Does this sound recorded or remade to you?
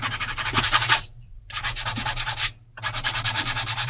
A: remade